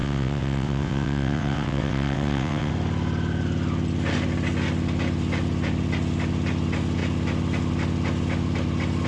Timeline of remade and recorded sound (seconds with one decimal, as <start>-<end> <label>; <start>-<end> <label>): 0.0-2.7 remade; 2.7-9.1 recorded